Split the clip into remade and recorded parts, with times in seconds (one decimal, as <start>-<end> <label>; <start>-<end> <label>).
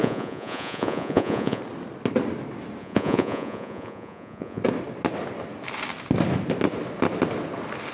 0.0-1.6 remade; 1.6-2.8 recorded; 2.8-4.6 remade; 4.6-7.9 recorded